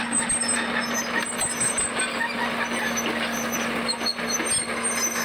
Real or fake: real